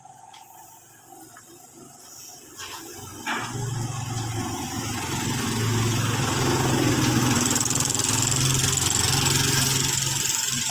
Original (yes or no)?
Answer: yes